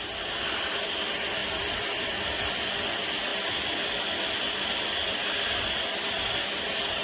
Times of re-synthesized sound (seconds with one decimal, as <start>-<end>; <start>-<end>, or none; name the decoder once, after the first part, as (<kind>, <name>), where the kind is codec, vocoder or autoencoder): 1.4-2.3 (vocoder, BigVGAN v2)